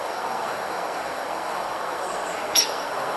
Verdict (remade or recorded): remade